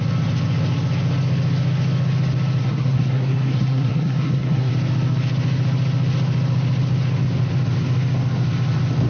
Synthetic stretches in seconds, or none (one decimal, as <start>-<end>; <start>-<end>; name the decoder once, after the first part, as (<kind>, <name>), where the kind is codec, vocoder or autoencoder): 2.6-4.7 (codec, SNAC)